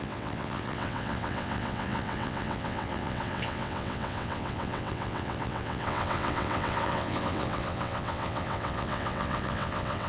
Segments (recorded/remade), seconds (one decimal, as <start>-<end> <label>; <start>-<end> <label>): 0.0-10.1 remade